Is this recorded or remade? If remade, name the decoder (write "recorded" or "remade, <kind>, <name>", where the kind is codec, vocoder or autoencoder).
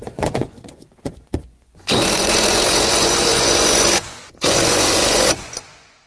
remade, vocoder, Vocos